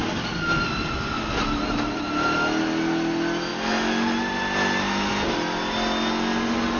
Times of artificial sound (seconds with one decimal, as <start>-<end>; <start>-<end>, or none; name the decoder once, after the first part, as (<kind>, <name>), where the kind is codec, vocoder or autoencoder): none